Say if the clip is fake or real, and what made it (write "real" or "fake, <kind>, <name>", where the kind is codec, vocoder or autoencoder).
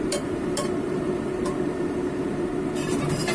fake, vocoder, BigVGAN v2